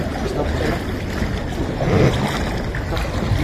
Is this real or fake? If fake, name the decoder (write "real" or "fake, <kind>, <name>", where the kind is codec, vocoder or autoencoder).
real